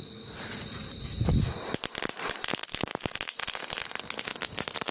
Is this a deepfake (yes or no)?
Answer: no